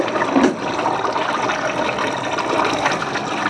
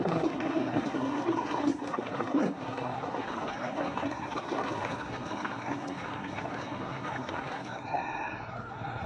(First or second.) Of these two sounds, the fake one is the second